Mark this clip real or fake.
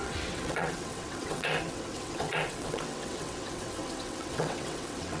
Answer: fake